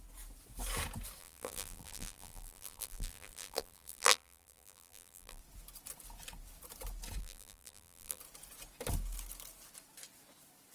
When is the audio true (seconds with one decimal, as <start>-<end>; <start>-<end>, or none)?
0.0-1.2; 5.4-7.2; 8.2-10.7